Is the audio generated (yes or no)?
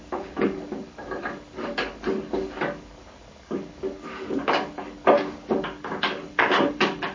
yes